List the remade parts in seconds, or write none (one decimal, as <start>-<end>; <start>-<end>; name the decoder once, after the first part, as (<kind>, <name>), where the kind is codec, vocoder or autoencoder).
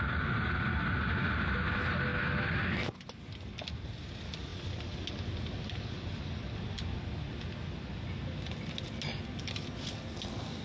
none